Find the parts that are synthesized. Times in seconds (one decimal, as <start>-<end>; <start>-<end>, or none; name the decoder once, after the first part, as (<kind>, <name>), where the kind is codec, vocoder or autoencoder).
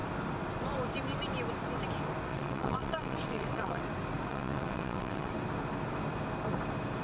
2.3-3.8 (vocoder, WaveNeXt); 4.3-5.3